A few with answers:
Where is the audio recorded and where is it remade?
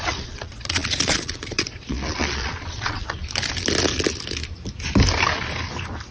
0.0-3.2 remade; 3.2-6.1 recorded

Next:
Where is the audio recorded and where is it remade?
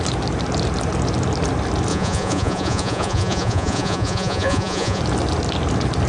0.0-1.9 recorded; 1.9-5.0 remade; 5.0-6.1 recorded